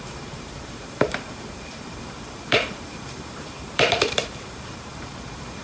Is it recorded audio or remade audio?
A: remade